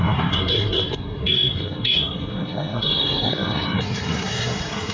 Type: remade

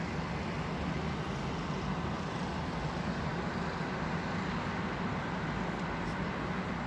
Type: recorded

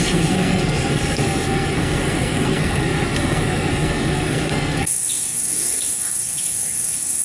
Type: remade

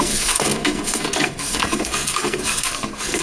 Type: remade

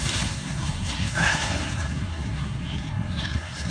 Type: remade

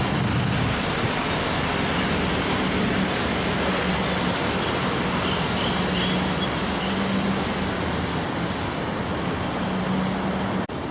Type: recorded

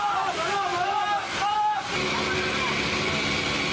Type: recorded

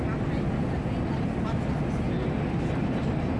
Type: recorded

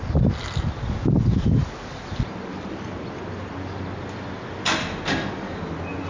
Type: recorded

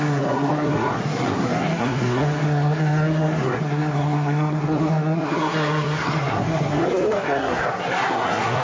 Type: remade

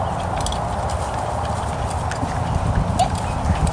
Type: recorded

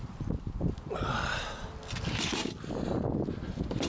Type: recorded